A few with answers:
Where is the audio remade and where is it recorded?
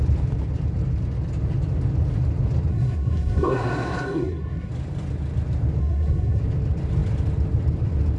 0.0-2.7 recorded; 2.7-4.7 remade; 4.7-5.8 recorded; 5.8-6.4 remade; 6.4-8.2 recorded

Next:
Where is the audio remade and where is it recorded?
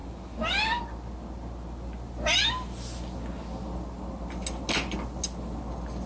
0.0-6.1 recorded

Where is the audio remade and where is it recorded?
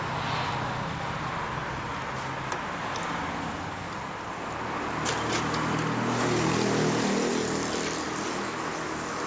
0.0-9.3 recorded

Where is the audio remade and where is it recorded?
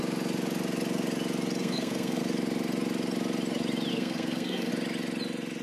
0.0-1.6 recorded; 1.6-2.2 remade; 2.2-3.9 recorded; 3.9-4.7 remade; 4.7-5.6 recorded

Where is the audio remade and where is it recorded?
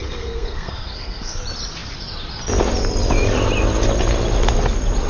0.0-1.4 remade; 1.4-5.1 recorded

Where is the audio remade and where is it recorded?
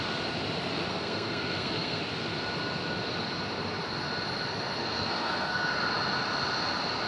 0.0-0.9 recorded; 0.9-2.0 remade; 2.0-4.8 recorded; 4.8-5.7 remade; 5.7-7.1 recorded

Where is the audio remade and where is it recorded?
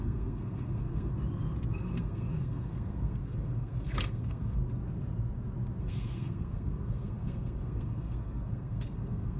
0.0-1.1 remade; 1.1-1.7 recorded; 1.7-4.6 remade; 4.6-5.8 recorded; 5.8-9.4 remade